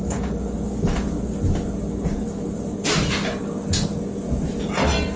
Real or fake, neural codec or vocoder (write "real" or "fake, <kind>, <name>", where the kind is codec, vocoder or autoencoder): real